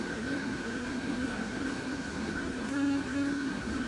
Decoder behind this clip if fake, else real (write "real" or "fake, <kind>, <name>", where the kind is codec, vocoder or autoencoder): fake, codec, SNAC